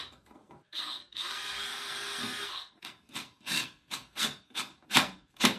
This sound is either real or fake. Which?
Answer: fake